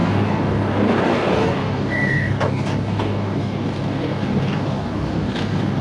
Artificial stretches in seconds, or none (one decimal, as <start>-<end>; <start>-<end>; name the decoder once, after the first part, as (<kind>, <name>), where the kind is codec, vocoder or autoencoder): 0.0-5.8 (codec, DAC)